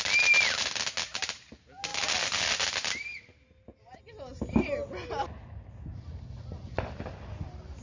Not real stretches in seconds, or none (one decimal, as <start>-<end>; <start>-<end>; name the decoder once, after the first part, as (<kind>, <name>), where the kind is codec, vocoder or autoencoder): none